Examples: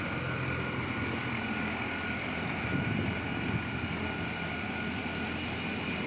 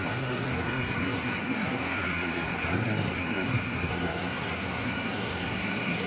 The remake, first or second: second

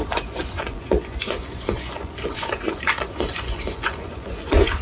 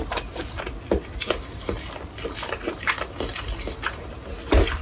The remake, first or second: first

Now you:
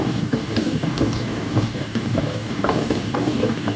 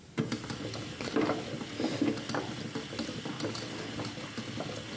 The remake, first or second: first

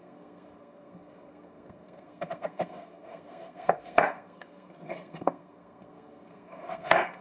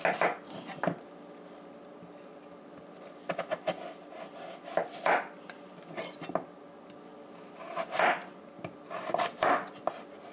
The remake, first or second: first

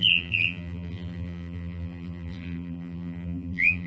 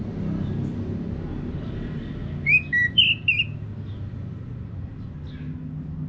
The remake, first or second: first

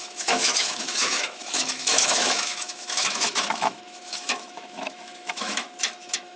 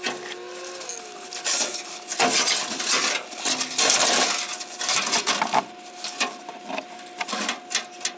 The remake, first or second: first